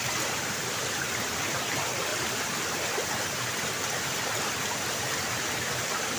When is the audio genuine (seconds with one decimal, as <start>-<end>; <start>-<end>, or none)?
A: 0.0-6.2